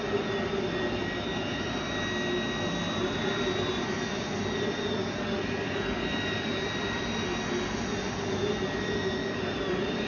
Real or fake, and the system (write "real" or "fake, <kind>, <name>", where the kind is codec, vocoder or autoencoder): real